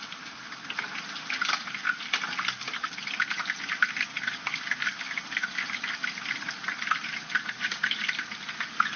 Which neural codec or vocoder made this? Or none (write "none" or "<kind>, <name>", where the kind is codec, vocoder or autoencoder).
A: none